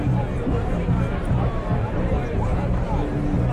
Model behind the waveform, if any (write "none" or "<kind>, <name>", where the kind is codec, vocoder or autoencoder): none